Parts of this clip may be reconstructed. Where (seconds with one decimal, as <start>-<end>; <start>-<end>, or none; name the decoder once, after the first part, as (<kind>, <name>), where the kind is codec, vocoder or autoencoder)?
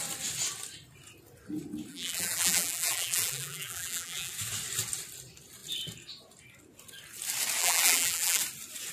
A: 1.9-4.3 (vocoder, BigVGAN v2); 7.6-8.4